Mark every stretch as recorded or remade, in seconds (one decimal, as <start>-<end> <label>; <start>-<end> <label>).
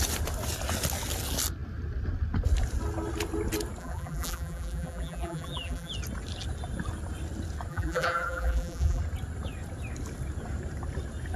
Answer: 0.0-3.8 recorded; 3.8-5.9 remade; 5.9-7.7 recorded; 7.7-9.0 remade; 9.0-11.4 recorded